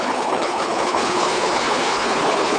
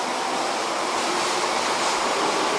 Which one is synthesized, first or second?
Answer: first